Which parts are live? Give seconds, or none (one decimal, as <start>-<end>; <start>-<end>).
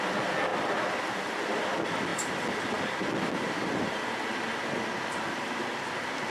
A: 0.0-6.3